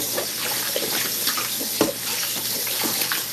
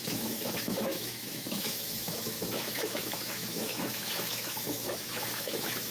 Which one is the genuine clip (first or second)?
first